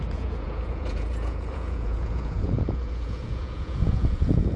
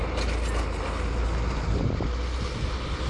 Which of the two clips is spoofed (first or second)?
first